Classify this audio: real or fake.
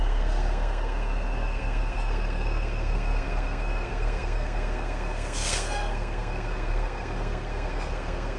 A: fake